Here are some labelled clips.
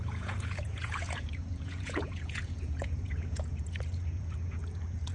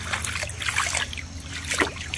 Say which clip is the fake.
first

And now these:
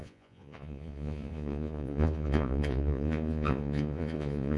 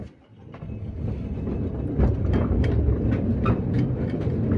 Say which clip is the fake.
first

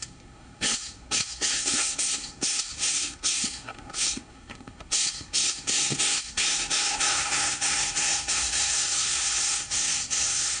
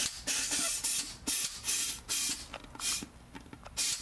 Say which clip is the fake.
first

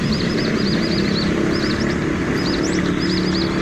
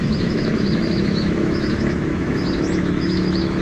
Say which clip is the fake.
second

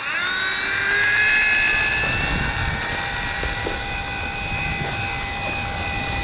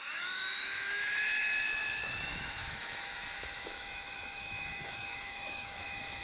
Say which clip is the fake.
second